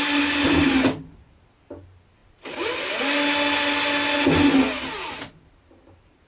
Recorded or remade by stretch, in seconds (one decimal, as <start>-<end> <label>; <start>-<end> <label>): 0.0-6.3 recorded